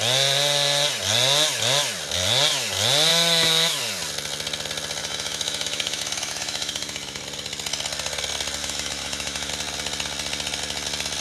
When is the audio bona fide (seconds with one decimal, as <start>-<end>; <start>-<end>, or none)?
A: 0.0-3.1; 3.8-5.0; 7.2-8.6; 9.5-11.2